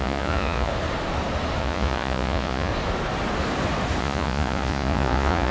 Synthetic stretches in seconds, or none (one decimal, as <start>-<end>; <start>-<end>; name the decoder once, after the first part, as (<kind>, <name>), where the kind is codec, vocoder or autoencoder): 0.0-0.7 (vocoder, Vocos); 1.6-2.7; 4.0-5.5